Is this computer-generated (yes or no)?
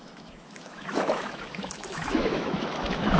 yes